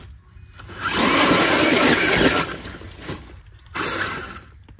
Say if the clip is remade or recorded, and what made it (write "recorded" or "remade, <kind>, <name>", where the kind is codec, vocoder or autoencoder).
recorded